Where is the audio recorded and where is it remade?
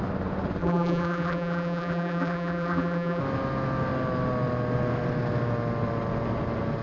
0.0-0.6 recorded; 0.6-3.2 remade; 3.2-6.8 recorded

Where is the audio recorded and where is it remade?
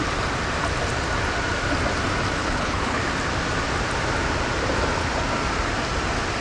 0.0-2.4 recorded; 2.4-3.0 remade; 3.0-6.4 recorded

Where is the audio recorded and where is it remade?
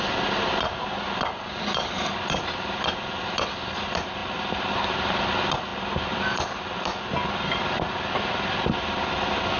0.0-9.6 recorded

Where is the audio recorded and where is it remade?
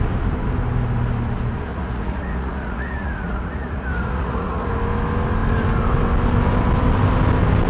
0.0-1.7 recorded; 1.7-4.7 remade; 4.7-7.7 recorded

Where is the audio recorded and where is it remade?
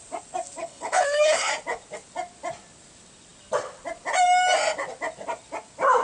0.0-0.6 recorded; 0.6-1.5 remade; 1.5-6.0 recorded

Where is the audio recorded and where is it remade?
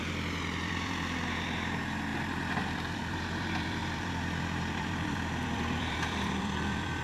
0.0-7.0 remade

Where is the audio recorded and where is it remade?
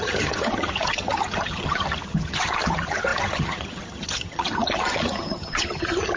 0.0-6.2 remade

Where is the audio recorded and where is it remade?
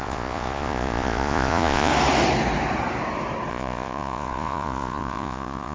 0.0-1.9 remade; 1.9-3.5 recorded; 3.5-5.7 remade